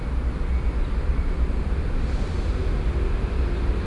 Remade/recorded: recorded